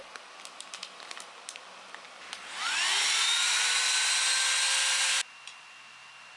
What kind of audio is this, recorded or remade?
recorded